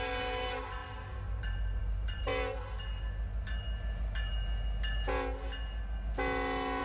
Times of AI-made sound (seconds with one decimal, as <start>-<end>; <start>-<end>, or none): 0.0-2.3